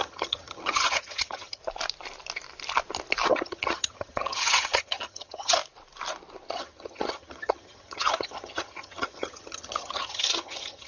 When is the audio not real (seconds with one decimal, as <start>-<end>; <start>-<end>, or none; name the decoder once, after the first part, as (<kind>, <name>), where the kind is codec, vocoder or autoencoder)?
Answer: 0.0-1.6 (vocoder, HiFi-GAN); 3.3-5.6; 6.5-10.9